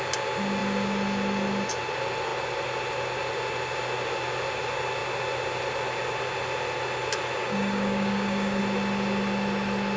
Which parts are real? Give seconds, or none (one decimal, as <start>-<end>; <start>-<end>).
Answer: 0.0-7.4; 8.6-10.0